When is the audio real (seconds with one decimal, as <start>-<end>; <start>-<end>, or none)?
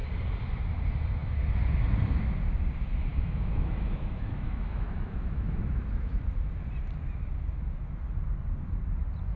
0.0-3.1; 6.2-9.4